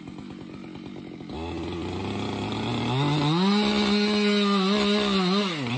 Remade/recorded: recorded